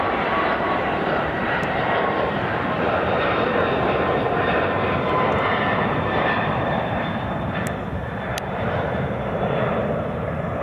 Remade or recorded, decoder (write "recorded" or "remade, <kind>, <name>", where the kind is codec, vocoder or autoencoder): remade, vocoder, BigVGAN v2